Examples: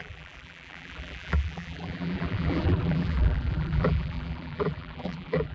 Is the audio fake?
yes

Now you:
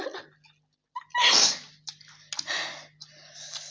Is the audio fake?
no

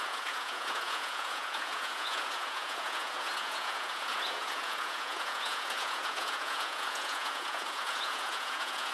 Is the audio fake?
yes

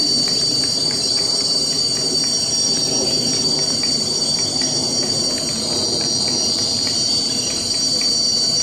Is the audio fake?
yes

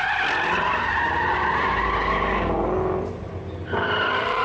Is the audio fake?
no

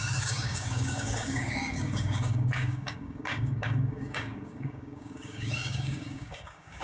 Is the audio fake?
yes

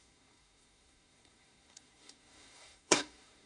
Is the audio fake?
yes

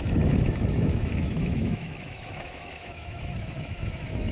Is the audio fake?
yes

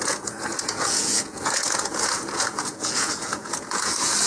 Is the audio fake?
yes